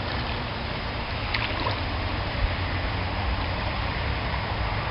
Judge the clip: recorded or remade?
recorded